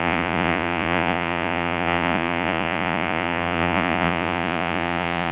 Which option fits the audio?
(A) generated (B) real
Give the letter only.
A